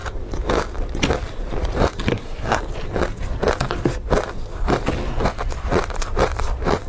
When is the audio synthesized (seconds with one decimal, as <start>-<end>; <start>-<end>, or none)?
2.1-2.6